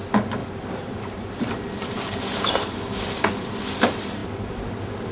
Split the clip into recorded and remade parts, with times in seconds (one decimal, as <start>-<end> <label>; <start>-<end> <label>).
0.0-0.4 recorded; 0.4-3.5 remade; 3.5-5.1 recorded